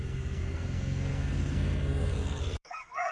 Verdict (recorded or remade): remade